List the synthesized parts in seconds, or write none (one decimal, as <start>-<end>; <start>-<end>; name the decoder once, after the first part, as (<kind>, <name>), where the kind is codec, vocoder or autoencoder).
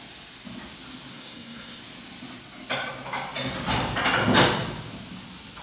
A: 1.1-1.8 (codec, SNAC)